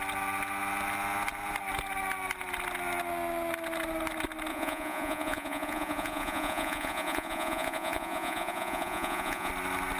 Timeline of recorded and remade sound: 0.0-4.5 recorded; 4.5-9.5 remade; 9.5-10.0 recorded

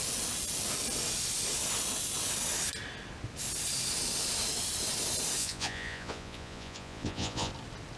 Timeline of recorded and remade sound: 0.0-5.4 recorded; 5.4-7.5 remade; 7.5-8.0 recorded